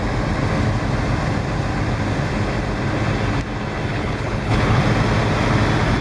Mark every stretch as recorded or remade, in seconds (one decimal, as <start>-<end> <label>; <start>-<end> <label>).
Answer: 0.0-3.9 recorded; 3.9-4.8 remade; 4.8-6.0 recorded